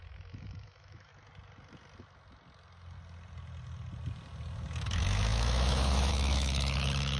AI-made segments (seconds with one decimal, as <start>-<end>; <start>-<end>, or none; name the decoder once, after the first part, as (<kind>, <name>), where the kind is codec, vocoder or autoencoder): 0.0-1.1 (autoencoder, DAC-VAE); 4.8-7.2